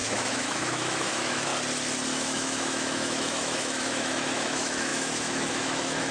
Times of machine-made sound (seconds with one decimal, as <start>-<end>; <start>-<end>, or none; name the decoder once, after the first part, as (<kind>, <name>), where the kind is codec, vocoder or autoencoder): 0.0-1.5 (autoencoder, DAC-VAE); 2.1-6.1